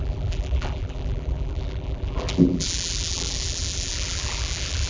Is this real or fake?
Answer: fake